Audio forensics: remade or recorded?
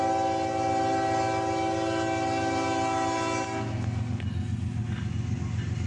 recorded